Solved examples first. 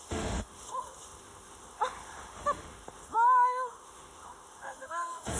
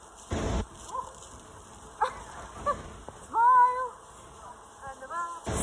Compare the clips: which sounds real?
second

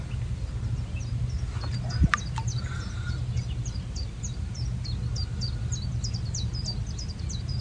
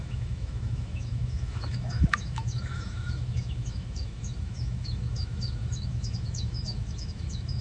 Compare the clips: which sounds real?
first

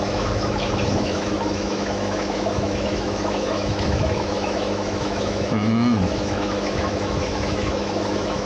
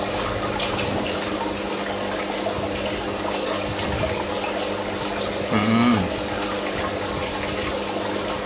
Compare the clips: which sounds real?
second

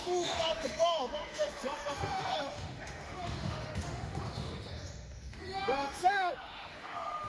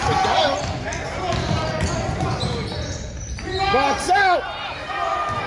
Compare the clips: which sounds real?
second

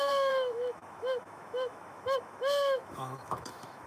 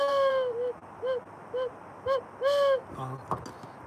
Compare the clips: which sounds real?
second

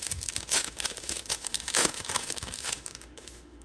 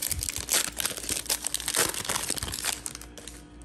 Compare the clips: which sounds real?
second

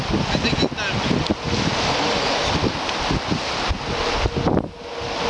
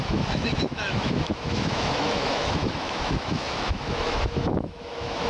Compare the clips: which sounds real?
first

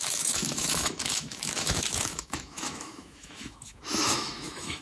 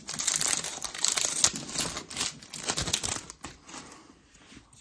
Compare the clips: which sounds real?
second